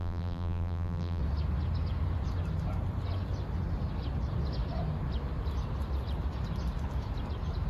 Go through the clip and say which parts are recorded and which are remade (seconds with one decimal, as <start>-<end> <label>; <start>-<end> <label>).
0.0-1.2 remade; 1.2-7.7 recorded

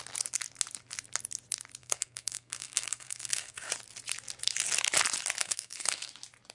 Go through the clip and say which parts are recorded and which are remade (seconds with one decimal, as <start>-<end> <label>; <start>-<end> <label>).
0.0-1.8 recorded; 1.8-3.7 remade; 3.7-5.4 recorded; 5.4-6.1 remade; 6.1-6.5 recorded

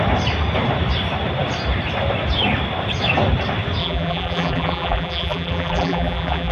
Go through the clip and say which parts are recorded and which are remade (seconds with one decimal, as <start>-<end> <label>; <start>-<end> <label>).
0.0-3.8 recorded; 3.8-6.5 remade

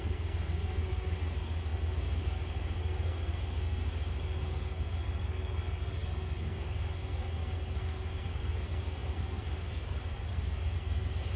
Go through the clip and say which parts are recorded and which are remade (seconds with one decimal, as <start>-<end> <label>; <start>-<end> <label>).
0.0-11.4 remade

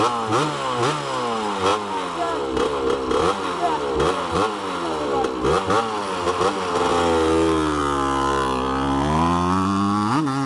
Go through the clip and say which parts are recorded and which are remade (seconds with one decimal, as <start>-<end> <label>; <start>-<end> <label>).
0.0-10.5 recorded

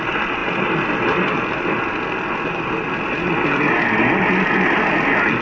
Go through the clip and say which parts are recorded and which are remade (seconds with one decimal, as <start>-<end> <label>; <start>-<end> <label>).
0.0-5.4 recorded

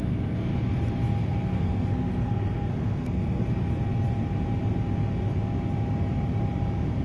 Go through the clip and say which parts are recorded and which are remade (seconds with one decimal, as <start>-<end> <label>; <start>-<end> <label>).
0.0-0.5 remade; 0.5-1.2 recorded; 1.2-3.4 remade; 3.4-7.0 recorded